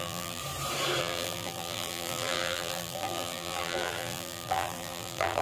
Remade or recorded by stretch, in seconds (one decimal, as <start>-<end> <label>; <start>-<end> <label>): 0.0-0.4 remade; 0.4-1.0 recorded; 1.0-5.4 remade